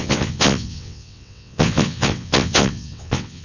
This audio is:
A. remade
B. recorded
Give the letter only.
A